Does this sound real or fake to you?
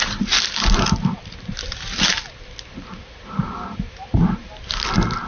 real